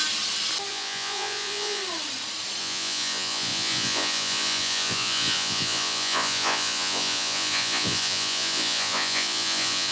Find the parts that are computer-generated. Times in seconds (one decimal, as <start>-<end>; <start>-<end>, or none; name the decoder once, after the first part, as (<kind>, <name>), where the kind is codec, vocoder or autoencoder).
0.7-1.8 (vocoder, Vocos); 2.6-9.9